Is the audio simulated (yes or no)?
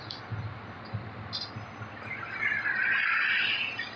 no